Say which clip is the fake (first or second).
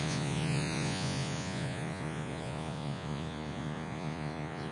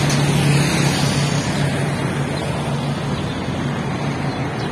first